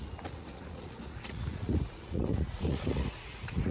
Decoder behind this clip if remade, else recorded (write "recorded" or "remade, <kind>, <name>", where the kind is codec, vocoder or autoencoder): remade, vocoder, Vocos